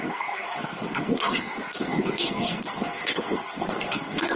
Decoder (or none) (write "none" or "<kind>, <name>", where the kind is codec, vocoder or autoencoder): codec, SNAC